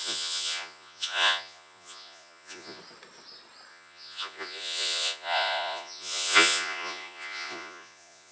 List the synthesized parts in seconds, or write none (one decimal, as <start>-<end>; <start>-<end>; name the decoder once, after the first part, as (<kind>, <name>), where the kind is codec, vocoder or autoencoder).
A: 0.0-2.8 (vocoder, Vocos); 3.7-8.3